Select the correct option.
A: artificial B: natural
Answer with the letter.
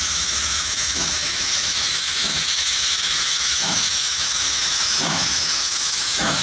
A